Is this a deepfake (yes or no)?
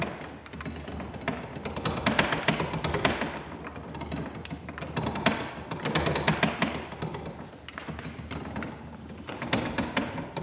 no